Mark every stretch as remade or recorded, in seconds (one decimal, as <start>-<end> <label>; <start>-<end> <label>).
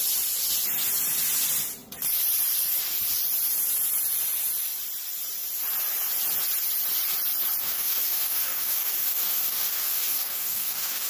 0.0-7.6 recorded; 7.6-11.1 remade